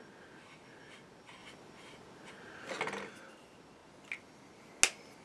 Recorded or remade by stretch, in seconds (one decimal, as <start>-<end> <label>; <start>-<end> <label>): 0.0-5.2 recorded